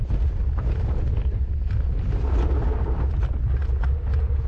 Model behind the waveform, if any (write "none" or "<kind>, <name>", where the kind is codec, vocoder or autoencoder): none